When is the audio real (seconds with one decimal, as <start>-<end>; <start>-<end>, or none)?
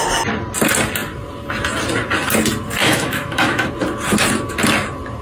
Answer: 0.0-2.8; 3.7-5.2